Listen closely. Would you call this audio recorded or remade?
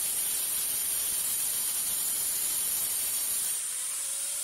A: remade